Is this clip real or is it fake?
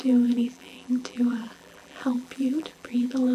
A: fake